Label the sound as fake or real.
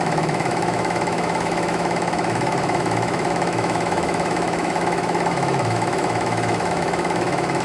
fake